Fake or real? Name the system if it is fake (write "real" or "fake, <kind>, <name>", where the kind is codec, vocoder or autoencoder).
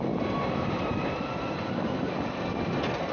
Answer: real